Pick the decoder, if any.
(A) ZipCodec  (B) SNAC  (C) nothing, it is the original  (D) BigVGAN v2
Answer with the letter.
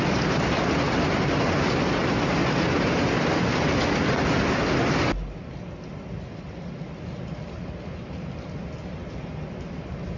C